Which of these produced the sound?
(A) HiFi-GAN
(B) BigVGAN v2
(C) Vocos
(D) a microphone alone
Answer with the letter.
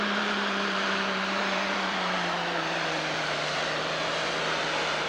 B